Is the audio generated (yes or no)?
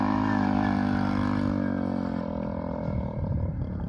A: yes